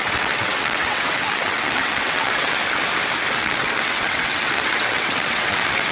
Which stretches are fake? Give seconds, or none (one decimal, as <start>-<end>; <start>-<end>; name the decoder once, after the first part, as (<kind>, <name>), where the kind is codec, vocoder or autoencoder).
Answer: 0.0-2.6 (vocoder, WaveNeXt); 3.3-5.9